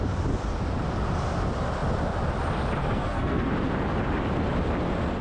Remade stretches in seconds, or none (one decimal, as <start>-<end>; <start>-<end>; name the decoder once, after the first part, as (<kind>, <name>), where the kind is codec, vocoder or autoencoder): 2.8-3.5 (codec, SNAC)